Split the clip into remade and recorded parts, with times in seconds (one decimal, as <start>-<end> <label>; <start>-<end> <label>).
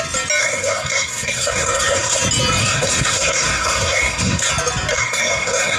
0.0-0.4 recorded; 0.4-2.2 remade; 2.2-2.6 recorded; 2.6-4.5 remade; 4.5-4.9 recorded; 4.9-5.8 remade